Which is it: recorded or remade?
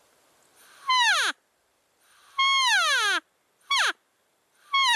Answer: recorded